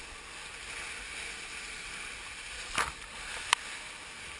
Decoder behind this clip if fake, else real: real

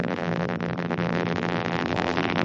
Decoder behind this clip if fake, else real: fake, vocoder, BigVGAN v2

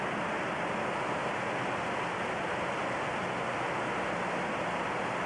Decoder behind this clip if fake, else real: real